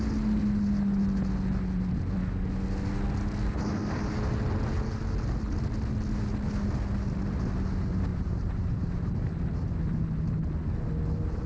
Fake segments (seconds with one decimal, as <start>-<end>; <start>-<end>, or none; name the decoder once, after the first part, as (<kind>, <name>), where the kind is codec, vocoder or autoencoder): 8.1-9.1 (vocoder, BigVGAN v2)